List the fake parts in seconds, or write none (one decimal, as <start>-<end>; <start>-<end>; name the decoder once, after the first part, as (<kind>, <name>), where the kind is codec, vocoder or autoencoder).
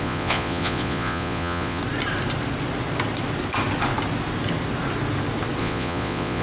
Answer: 0.0-1.8 (vocoder, Vocos); 5.6-6.4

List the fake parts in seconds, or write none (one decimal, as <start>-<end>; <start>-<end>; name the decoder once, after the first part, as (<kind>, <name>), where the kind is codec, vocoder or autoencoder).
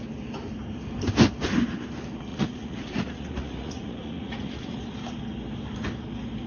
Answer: 2.3-4.8 (vocoder, Vocos)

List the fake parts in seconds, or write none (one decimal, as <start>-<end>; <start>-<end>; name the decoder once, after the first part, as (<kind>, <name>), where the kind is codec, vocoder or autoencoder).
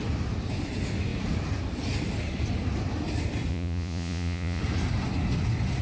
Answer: 3.5-4.6 (vocoder, Vocos)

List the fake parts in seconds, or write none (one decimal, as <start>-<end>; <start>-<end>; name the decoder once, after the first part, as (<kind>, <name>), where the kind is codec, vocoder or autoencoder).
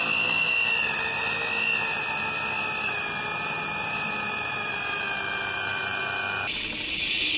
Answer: none